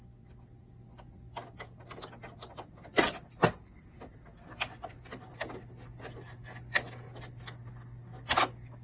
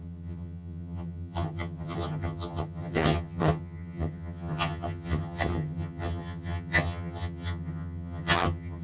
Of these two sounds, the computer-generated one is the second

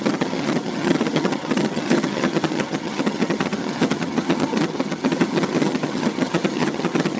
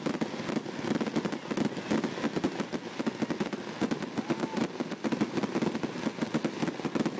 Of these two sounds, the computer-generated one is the first